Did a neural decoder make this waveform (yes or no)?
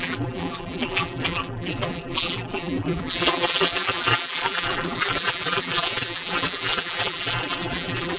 yes